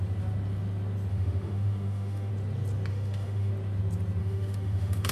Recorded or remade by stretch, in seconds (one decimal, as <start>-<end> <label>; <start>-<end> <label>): 0.0-1.1 recorded; 1.1-2.3 remade; 2.3-2.9 recorded; 2.9-3.5 remade; 3.5-4.2 recorded; 4.2-5.1 remade